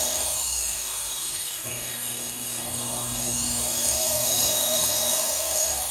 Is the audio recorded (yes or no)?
no